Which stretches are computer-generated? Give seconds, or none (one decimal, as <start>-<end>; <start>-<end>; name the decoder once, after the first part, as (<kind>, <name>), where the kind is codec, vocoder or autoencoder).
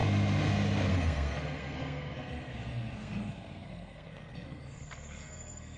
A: 0.9-5.8 (codec, SNAC)